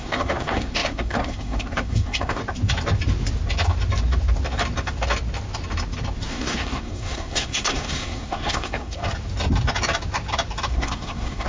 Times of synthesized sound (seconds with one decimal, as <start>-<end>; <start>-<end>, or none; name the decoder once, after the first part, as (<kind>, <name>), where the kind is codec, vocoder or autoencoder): 0.0-2.4 (codec, SNAC); 6.3-9.0; 10.7-11.5